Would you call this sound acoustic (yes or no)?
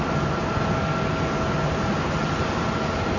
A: yes